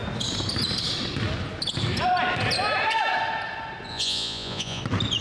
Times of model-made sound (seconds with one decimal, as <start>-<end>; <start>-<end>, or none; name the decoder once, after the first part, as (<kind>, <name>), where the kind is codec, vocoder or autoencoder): 3.9-4.8 (vocoder, Vocos)